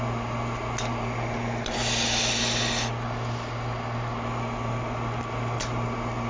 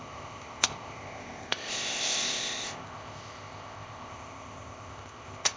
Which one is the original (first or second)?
first